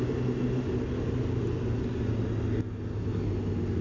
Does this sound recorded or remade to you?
recorded